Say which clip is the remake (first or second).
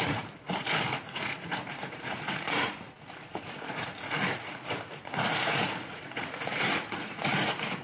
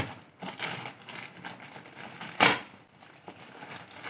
first